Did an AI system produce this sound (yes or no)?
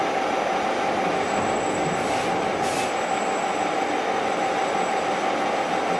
no